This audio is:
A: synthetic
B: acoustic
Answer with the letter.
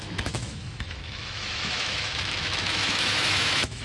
A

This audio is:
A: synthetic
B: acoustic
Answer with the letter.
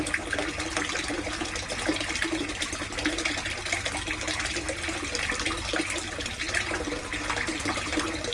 B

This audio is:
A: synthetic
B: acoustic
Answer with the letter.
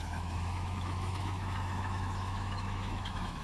A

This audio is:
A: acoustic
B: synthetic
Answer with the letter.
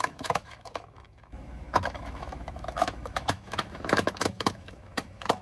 B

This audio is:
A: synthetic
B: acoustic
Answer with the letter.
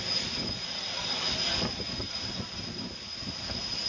B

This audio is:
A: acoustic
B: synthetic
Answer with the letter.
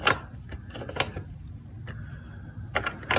A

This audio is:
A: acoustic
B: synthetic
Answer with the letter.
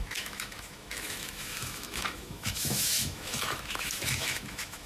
B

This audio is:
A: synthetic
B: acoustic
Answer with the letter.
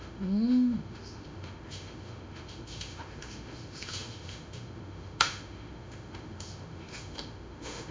A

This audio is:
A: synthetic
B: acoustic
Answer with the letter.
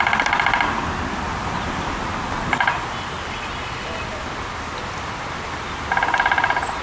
B